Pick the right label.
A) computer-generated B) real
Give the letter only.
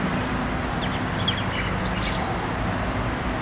B